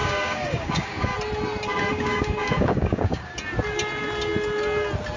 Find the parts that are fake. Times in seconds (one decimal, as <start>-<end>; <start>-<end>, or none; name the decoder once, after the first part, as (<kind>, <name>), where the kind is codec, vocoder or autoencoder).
0.0-1.1 (codec, DAC); 1.9-3.3